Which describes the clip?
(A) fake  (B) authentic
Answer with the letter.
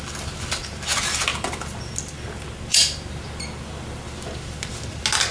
B